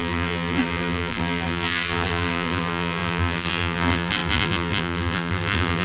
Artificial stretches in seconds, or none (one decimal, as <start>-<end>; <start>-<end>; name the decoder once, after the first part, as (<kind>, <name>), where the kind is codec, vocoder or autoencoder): 0.0-5.8 (vocoder, BigVGAN v2)